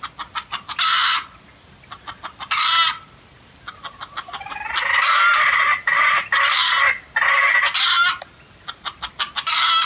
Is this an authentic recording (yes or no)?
yes